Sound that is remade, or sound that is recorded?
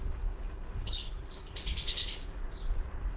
remade